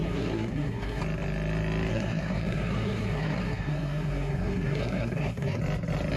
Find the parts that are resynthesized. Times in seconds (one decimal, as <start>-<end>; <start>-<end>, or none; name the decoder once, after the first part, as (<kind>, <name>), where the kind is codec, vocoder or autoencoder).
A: 0.0-1.0 (codec, SNAC); 1.9-5.6